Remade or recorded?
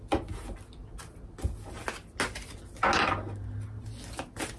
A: recorded